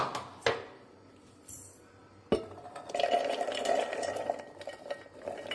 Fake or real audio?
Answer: real